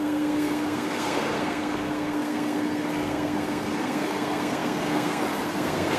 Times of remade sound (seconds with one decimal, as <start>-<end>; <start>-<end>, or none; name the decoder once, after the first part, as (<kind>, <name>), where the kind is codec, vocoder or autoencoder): 0.0-6.0 (codec, SNAC)